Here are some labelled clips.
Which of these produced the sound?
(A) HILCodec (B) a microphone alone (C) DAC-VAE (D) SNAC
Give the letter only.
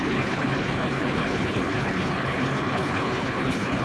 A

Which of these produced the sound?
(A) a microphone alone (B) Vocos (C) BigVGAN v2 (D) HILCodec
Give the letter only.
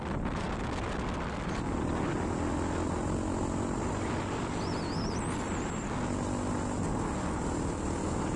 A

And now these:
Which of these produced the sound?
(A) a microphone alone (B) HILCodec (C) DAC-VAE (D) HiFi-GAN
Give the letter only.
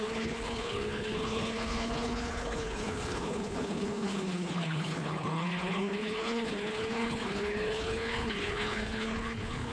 B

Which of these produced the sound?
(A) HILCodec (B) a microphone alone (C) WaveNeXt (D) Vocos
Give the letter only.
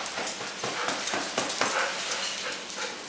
B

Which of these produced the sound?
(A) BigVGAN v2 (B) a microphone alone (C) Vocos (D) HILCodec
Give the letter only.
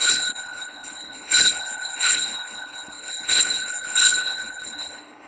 D